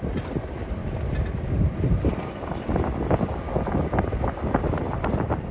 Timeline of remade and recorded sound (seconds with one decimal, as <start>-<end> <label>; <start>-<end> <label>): 0.0-0.8 recorded; 0.8-2.7 remade; 2.7-5.5 recorded